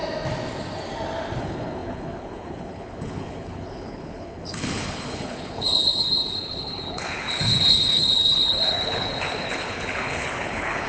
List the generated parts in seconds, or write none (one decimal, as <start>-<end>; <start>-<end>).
1.4-10.9